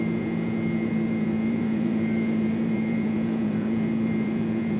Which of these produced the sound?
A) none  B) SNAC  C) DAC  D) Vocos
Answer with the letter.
D